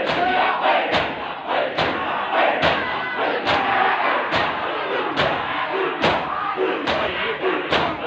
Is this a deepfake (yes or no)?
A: no